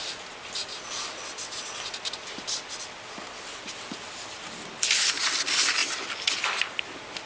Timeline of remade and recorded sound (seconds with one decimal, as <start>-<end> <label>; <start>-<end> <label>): 0.0-7.3 recorded